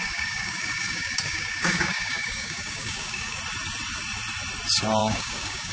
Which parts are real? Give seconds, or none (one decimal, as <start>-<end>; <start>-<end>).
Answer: 3.4-5.0